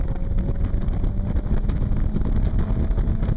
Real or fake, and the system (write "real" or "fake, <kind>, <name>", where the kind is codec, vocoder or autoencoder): real